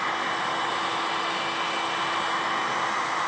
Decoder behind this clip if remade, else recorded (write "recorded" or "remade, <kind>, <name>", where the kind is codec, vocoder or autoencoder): recorded